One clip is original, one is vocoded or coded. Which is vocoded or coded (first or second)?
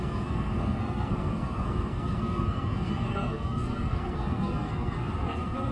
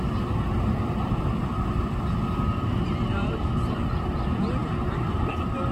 first